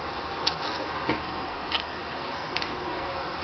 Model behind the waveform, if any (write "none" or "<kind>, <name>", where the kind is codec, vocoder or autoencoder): codec, SNAC